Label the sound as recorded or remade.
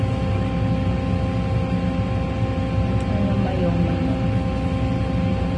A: recorded